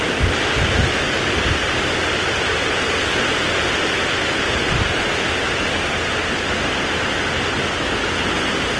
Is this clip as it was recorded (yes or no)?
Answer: yes